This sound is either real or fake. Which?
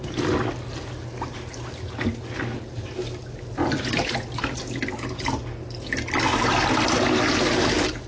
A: real